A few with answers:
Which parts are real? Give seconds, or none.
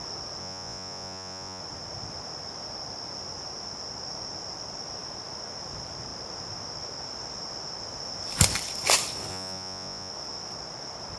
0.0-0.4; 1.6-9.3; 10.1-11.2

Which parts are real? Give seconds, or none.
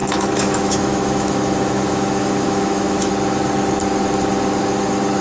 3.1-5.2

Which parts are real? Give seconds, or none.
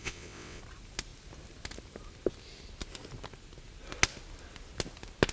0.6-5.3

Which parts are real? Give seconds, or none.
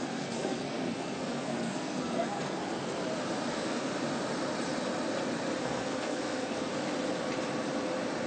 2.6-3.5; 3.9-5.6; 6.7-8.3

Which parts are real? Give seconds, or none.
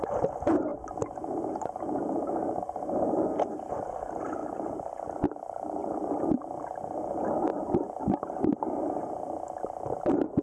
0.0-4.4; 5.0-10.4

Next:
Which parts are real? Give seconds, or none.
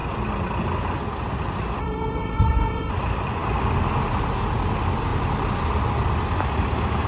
0.0-1.8; 2.9-7.1